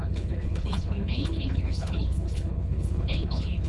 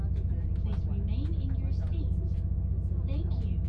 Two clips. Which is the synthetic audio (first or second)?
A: first